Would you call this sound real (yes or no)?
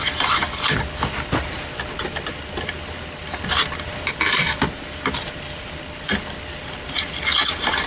yes